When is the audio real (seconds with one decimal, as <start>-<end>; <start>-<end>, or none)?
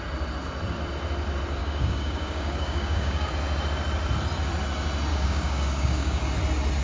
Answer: 0.0-1.6; 3.3-5.1; 6.2-6.8